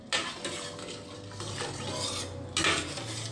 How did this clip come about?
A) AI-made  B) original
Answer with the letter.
B